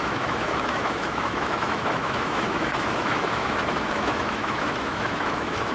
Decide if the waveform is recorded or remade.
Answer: remade